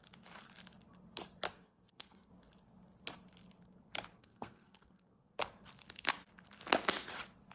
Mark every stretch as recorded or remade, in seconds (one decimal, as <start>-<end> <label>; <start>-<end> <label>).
0.0-1.5 recorded; 1.5-2.3 remade; 2.3-4.2 recorded; 4.2-5.4 remade; 5.4-7.5 recorded